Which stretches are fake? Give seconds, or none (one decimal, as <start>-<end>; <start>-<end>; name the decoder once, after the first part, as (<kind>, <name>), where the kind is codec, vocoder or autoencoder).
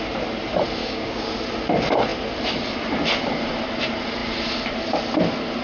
0.8-1.3 (codec, DAC)